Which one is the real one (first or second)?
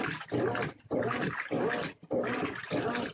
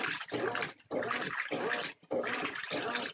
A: first